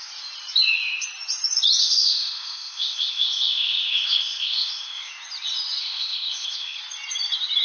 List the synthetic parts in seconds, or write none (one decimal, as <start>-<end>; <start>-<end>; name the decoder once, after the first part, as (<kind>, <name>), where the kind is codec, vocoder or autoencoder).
1.8-5.1 (codec, ZipCodec); 5.8-6.8